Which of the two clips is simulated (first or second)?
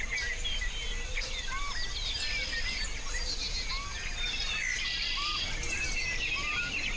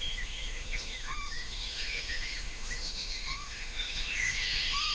second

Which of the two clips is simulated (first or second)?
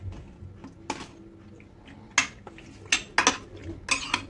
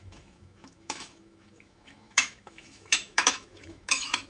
second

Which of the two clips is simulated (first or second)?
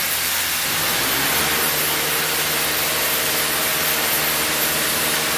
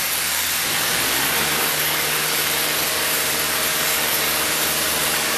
second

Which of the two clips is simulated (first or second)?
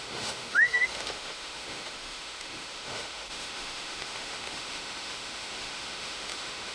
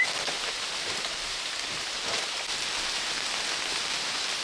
first